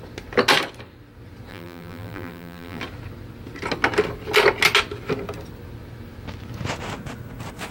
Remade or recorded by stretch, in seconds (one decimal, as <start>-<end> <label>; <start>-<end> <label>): 0.0-1.5 recorded; 1.5-2.8 remade; 2.8-7.7 recorded